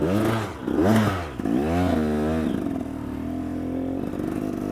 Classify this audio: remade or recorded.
recorded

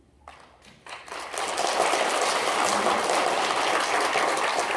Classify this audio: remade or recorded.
recorded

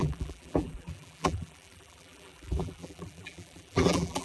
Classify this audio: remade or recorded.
remade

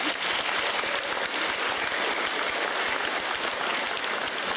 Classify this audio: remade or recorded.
recorded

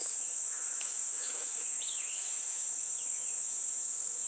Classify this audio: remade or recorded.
remade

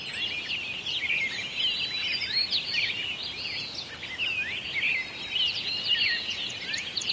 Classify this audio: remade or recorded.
recorded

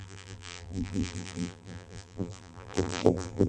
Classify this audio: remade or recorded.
remade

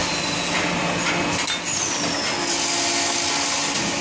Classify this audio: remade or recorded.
recorded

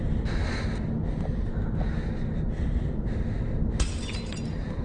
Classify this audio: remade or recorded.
recorded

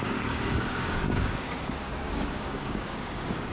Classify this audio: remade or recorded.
remade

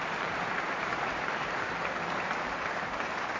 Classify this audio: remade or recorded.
remade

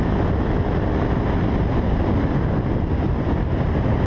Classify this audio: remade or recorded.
recorded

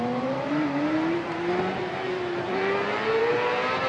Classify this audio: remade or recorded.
remade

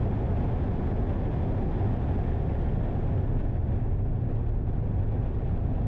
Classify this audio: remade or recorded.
recorded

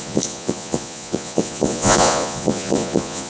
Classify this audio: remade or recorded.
remade